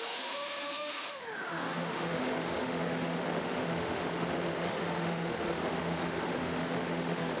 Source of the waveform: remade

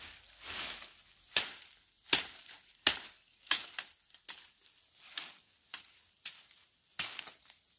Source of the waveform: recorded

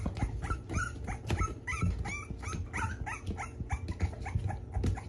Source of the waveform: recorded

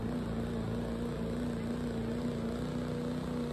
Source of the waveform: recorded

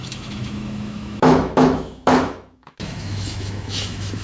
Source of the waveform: remade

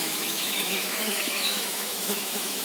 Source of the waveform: remade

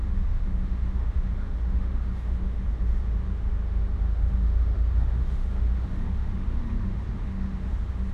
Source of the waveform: remade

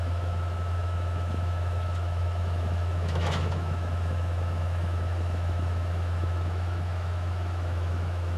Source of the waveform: remade